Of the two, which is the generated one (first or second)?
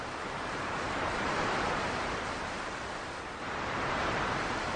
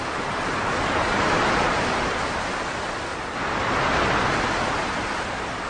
first